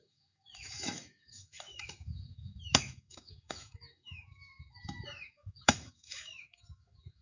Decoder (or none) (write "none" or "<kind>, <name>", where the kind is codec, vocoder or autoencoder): autoencoder, DAC-VAE